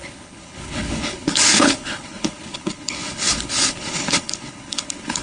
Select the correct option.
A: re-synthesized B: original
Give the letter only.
A